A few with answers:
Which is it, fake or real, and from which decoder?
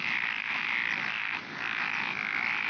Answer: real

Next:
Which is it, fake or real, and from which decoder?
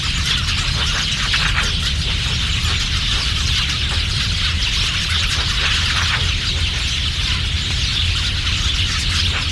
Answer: real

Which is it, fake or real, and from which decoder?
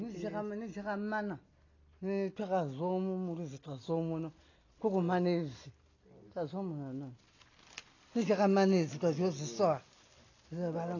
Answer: real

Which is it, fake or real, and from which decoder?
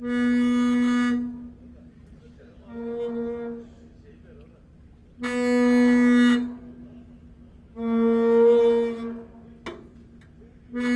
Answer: real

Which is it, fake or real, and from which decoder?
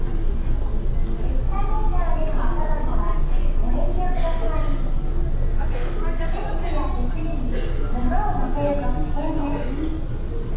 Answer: real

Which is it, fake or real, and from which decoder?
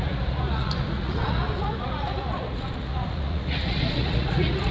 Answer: fake, vocoder, Vocos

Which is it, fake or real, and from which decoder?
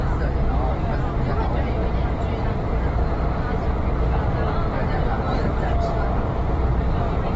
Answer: real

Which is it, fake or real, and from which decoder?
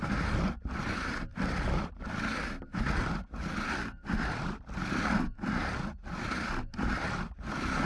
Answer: real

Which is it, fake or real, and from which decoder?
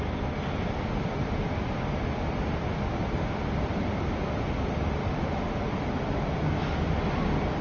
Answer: real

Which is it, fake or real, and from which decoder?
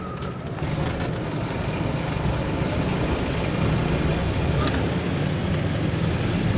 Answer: real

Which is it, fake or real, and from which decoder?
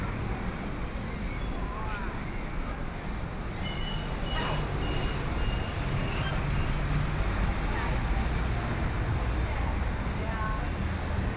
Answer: real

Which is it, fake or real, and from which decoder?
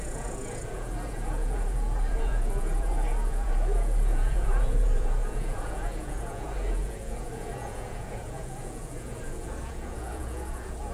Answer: fake, vocoder, Vocos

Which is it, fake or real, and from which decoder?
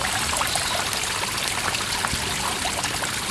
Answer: real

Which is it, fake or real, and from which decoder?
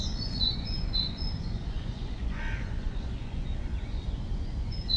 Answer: fake, vocoder, Vocos